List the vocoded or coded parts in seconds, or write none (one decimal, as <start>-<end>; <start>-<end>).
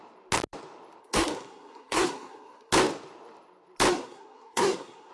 1.0-2.7; 3.9-5.1